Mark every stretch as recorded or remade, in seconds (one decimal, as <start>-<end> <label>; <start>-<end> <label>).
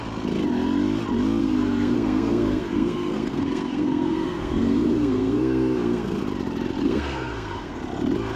0.0-1.4 recorded; 1.4-6.2 remade; 6.2-6.8 recorded; 6.8-7.8 remade; 7.8-8.4 recorded